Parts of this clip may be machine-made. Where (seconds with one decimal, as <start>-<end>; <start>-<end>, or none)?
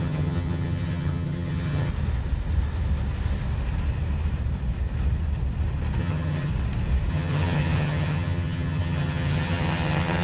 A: 0.0-1.9; 6.0-6.5; 7.1-10.2